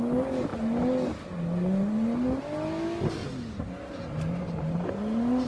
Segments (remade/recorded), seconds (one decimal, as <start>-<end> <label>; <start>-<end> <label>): 0.0-5.5 recorded

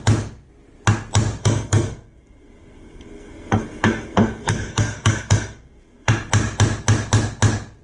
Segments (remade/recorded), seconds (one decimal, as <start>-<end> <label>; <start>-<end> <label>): 0.0-1.4 recorded; 1.4-6.1 remade; 6.1-7.8 recorded